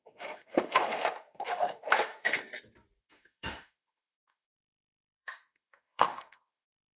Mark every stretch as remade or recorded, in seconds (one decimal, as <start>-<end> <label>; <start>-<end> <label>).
0.0-2.5 remade; 2.5-3.0 recorded; 3.0-7.0 remade